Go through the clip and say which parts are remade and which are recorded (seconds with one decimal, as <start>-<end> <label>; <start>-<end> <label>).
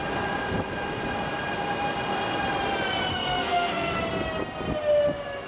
0.0-3.1 recorded; 3.1-3.9 remade; 3.9-5.5 recorded